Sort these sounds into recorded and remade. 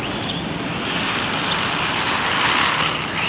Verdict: recorded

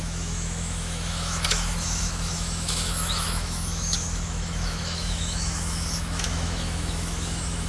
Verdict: remade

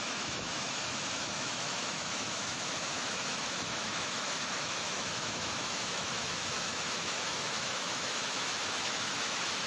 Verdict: remade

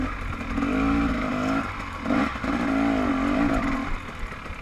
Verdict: recorded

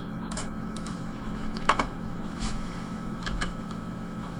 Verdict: remade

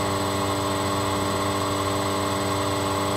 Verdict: recorded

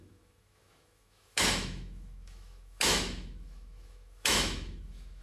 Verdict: remade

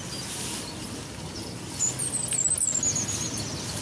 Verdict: recorded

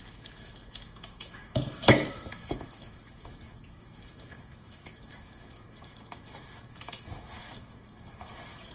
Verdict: remade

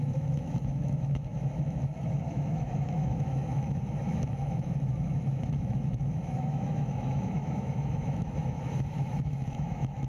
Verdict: remade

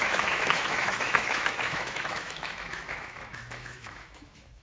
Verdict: remade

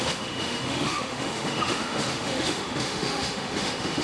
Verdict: remade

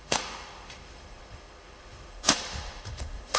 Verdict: remade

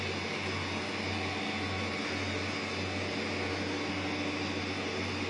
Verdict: recorded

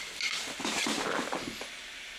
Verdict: recorded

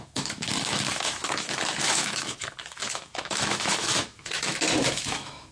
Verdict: remade